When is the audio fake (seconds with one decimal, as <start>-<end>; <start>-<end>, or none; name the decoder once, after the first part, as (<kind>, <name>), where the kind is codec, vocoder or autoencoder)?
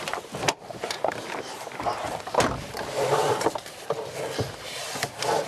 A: 0.8-2.3 (vocoder, BigVGAN v2)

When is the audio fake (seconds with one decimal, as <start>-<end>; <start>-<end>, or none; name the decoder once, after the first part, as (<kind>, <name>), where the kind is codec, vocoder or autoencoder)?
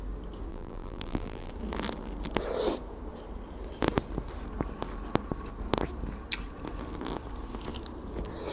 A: 0.5-1.5 (vocoder, BigVGAN v2)